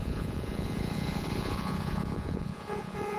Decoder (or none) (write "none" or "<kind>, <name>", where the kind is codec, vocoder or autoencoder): vocoder, Vocos